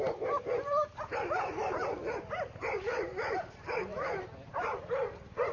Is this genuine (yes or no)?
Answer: yes